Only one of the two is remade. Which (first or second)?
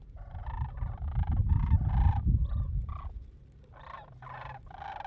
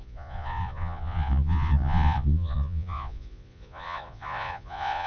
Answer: second